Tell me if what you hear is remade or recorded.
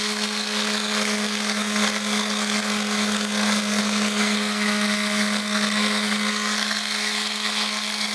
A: remade